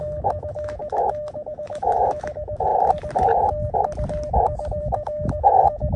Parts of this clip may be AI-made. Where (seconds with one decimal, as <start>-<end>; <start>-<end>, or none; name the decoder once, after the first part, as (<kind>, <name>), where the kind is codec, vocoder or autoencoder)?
0.0-2.7 (autoencoder, DAC-VAE); 4.8-6.0